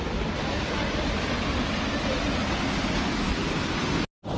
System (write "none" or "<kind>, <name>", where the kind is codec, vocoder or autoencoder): none